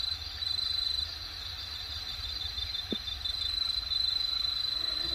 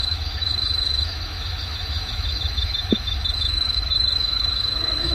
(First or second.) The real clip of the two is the first